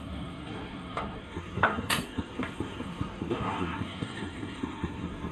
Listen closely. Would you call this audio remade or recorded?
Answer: remade